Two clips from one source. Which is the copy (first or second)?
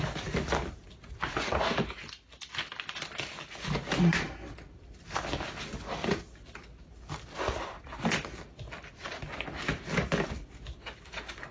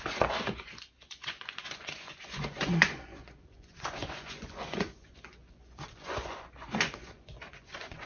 second